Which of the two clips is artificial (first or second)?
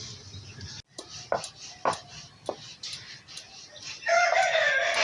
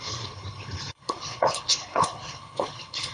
second